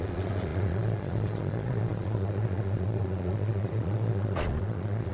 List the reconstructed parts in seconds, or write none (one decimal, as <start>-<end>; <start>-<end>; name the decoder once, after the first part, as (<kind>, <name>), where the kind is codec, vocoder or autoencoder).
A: 0.0-5.1 (vocoder, Vocos)